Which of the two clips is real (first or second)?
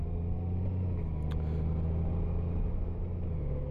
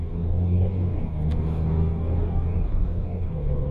first